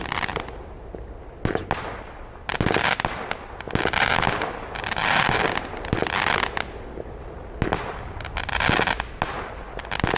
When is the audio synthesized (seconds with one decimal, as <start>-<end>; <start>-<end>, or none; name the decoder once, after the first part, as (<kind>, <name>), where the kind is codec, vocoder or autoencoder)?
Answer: 0.0-1.2 (vocoder, BigVGAN v2); 5.0-6.0